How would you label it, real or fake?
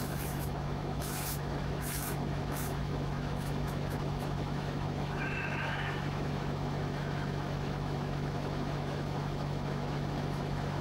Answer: fake